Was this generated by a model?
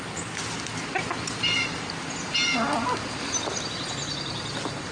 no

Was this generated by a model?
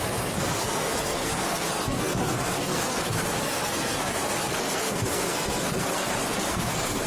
yes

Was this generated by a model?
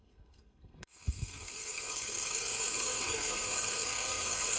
yes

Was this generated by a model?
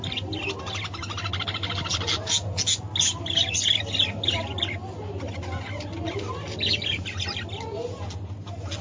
no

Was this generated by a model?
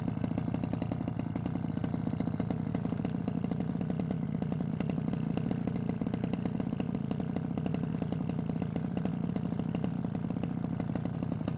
no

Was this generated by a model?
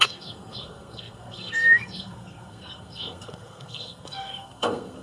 yes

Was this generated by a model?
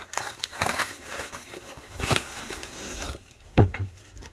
yes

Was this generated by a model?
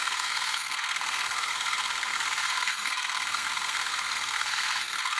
yes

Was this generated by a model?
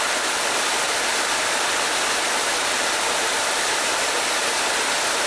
no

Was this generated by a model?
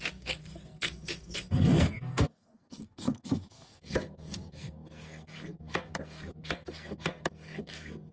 yes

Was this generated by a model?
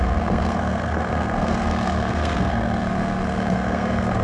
yes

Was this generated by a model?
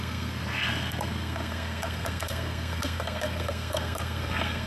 yes